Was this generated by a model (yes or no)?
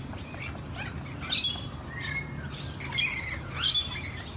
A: no